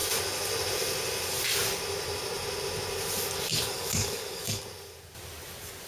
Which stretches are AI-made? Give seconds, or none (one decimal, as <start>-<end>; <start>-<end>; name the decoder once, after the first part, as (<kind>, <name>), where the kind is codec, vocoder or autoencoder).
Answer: 3.5-4.6 (codec, DAC)